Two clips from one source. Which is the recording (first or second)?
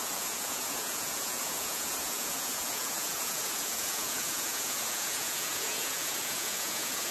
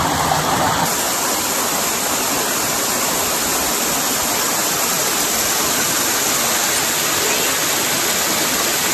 second